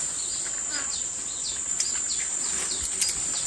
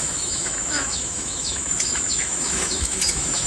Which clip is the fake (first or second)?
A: second